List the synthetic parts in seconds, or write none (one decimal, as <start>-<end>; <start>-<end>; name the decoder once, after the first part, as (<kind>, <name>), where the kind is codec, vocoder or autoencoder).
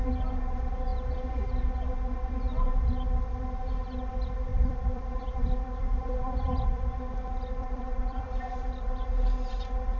4.5-7.0 (vocoder, BigVGAN v2); 7.6-8.4